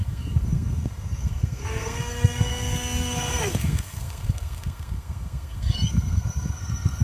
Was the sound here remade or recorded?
remade